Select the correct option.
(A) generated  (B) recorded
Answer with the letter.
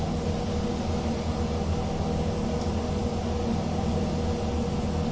B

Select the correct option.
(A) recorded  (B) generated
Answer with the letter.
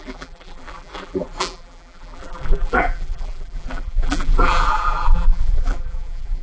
B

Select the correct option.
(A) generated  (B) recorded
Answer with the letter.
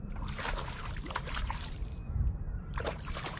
A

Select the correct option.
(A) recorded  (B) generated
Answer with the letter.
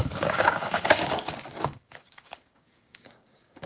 B